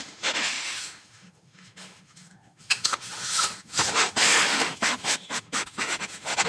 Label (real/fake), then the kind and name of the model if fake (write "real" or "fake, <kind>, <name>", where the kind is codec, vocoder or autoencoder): fake, autoencoder, DAC-VAE